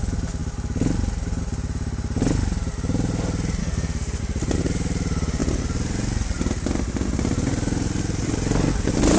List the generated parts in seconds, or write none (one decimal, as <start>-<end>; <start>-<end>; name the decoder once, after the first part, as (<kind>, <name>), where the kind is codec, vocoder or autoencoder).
3.6-4.2 (codec, SNAC)